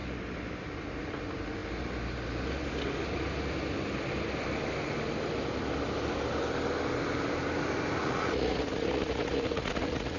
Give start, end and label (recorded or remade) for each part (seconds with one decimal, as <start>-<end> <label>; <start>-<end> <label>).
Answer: 0.0-8.0 recorded; 8.0-10.2 remade